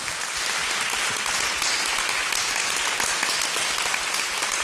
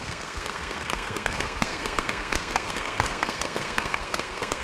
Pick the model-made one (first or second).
second